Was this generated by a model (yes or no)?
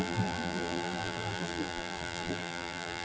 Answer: yes